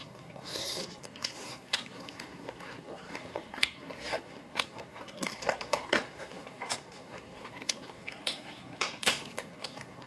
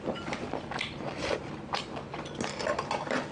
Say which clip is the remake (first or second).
first